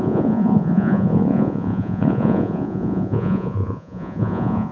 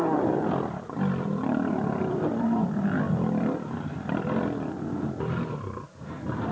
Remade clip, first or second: first